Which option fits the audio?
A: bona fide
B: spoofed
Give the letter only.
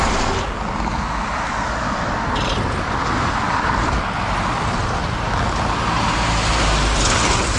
A